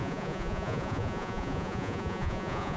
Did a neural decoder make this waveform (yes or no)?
yes